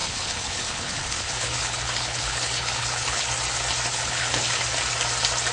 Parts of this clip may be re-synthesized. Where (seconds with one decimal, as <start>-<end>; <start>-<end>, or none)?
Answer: 0.0-3.3; 3.9-4.6